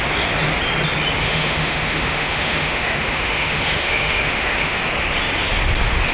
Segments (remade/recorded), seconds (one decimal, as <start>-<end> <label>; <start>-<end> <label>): 0.0-1.2 recorded; 1.2-4.8 remade; 4.8-6.1 recorded